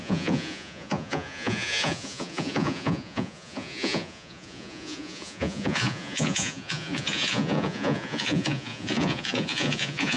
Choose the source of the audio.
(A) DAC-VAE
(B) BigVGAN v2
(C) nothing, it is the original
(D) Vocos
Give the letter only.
D